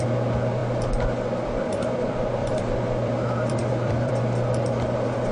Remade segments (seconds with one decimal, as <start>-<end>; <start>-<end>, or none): 2.4-4.1